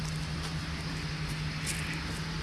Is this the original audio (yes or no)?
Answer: yes